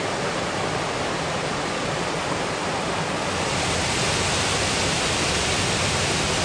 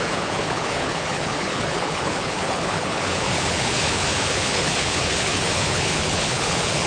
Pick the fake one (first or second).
second